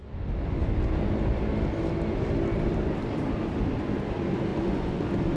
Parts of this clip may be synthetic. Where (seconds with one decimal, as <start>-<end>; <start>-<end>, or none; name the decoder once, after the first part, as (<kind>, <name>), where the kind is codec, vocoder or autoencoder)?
4.5-5.0 (vocoder, Vocos)